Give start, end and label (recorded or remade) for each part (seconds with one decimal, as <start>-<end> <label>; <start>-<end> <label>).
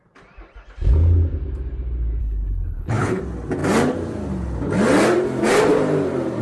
0.0-2.2 recorded; 2.2-3.2 remade; 3.2-6.4 recorded